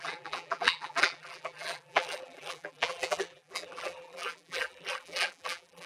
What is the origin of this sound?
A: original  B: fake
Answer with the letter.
B